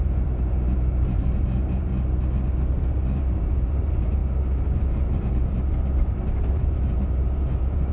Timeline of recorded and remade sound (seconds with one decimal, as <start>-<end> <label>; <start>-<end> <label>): 0.0-1.9 remade; 1.9-2.7 recorded; 2.7-4.2 remade; 4.2-4.8 recorded; 4.8-7.9 remade